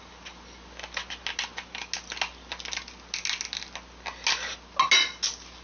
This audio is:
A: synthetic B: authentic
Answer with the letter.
B